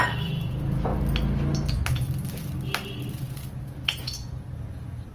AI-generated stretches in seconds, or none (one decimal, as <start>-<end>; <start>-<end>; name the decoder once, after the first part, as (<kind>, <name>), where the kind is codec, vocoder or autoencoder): 0.0-0.9 (vocoder, Vocos); 3.1-5.1